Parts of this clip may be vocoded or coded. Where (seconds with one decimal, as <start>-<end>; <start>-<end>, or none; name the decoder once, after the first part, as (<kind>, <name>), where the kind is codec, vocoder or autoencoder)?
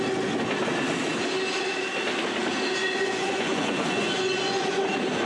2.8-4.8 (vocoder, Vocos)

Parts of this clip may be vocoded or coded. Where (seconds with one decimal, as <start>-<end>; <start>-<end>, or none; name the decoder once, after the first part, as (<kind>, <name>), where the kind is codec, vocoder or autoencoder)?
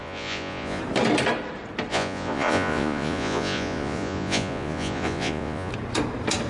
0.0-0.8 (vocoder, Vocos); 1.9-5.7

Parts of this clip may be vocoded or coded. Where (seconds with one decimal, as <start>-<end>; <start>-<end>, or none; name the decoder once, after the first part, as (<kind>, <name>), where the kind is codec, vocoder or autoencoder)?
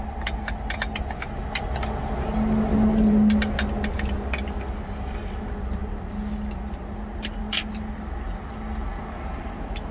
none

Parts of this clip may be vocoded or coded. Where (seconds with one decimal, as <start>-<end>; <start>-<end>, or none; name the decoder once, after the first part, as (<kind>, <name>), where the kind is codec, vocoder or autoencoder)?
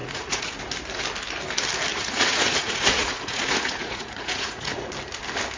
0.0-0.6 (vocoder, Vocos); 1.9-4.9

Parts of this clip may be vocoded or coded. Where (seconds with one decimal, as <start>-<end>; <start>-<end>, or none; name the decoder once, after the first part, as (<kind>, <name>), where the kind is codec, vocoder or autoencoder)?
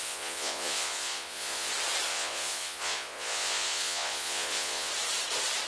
0.0-1.7 (vocoder, Vocos); 2.1-4.9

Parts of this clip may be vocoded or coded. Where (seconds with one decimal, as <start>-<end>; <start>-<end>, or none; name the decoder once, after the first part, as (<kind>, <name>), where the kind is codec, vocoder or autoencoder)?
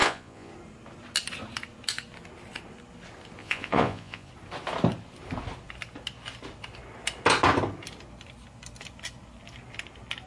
0.0-0.5 (vocoder, Vocos); 3.4-4.3